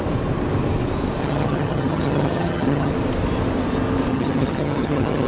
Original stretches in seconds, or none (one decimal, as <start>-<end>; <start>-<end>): 0.0-1.2; 2.9-4.1